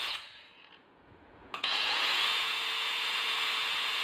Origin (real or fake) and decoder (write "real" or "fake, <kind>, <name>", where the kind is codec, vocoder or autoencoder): fake, vocoder, Vocos